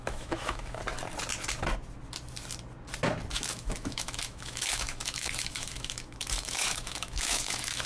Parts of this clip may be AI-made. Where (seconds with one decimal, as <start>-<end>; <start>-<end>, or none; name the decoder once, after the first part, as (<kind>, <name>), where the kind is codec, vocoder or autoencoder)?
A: 0.0-0.8 (autoencoder, DAC-VAE); 3.3-7.9